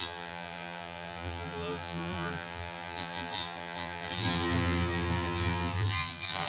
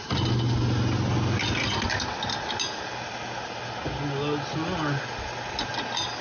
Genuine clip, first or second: second